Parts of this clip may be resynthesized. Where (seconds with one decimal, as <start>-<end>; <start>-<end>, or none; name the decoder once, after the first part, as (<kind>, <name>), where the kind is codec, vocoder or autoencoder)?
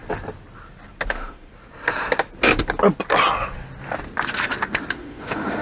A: 1.1-1.5 (autoencoder, DAC-VAE); 4.9-5.6